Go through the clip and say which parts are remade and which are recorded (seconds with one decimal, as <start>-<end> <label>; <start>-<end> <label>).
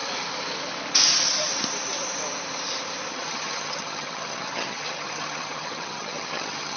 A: 0.0-3.1 recorded; 3.1-6.8 remade